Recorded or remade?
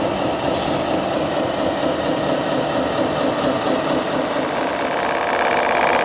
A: recorded